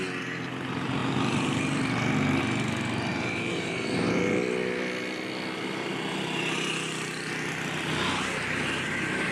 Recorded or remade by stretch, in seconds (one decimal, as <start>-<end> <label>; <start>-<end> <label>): 0.0-3.1 recorded; 3.1-4.2 remade; 4.2-9.3 recorded